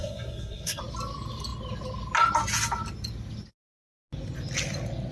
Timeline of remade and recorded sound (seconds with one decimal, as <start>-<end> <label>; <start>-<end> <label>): 0.0-0.8 remade; 0.8-5.1 recorded